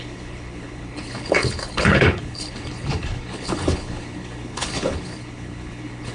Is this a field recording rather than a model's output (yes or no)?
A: no